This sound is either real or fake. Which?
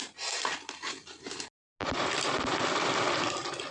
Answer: real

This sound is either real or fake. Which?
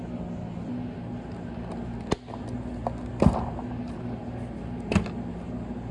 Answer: real